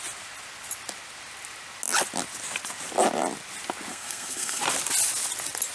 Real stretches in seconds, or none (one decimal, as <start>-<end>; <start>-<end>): 0.0-3.9; 4.6-5.7